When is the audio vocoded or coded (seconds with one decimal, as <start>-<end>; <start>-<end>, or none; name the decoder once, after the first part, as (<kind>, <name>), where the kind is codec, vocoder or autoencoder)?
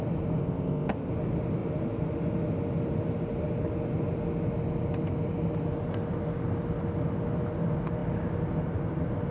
0.4-1.1 (codec, ZipCodec)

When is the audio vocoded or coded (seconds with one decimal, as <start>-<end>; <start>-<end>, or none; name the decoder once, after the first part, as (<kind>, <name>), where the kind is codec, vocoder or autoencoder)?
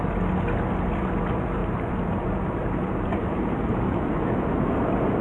1.6-4.7 (vocoder, BigVGAN v2)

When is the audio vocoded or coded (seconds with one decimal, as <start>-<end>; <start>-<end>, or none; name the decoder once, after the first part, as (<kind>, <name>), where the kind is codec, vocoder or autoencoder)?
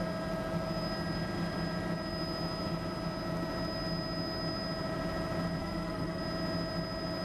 5.6-6.2 (codec, SNAC)